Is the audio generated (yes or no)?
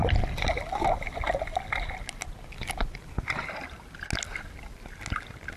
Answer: no